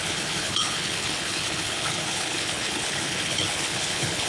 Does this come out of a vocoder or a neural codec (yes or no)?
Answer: yes